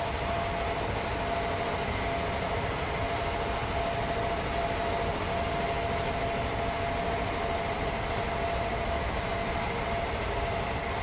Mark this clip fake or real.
real